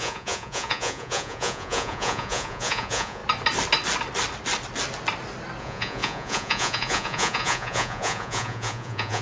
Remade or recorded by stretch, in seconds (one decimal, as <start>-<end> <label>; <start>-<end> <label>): 0.0-3.2 remade; 3.2-5.6 recorded; 5.6-9.2 remade